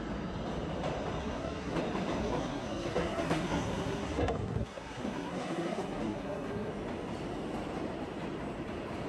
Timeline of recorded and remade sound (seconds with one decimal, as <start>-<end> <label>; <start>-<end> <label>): 0.0-1.2 recorded; 1.2-1.8 remade; 1.8-2.2 recorded; 2.2-6.7 remade; 6.7-9.1 recorded